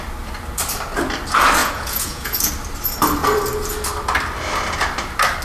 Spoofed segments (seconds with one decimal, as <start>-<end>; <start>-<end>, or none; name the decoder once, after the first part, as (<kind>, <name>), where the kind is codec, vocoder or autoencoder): 1.6-2.5 (vocoder, Vocos)